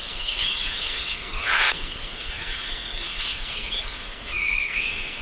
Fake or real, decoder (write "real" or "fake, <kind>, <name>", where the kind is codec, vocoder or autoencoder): fake, codec, SNAC